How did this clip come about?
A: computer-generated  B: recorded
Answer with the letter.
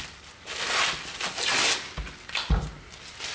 B